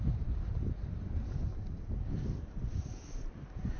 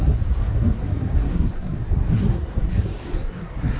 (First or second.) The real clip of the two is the first